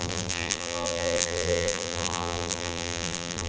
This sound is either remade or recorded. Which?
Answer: remade